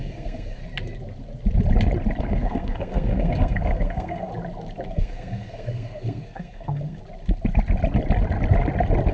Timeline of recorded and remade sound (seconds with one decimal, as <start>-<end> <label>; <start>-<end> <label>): 0.0-0.6 remade; 0.6-2.2 recorded; 2.2-4.3 remade; 4.3-4.9 recorded; 4.9-7.0 remade; 7.0-9.1 recorded